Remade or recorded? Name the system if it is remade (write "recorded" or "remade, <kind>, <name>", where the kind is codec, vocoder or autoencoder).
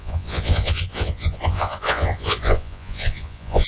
remade, vocoder, Vocos